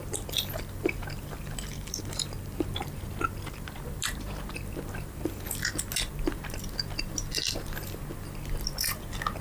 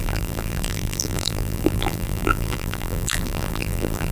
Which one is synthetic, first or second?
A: second